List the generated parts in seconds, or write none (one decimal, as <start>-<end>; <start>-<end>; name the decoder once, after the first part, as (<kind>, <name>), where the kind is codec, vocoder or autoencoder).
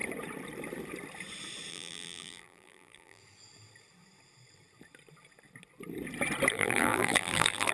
1.7-3.2 (vocoder, BigVGAN v2); 6.5-7.7